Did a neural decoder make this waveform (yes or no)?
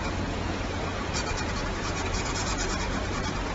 yes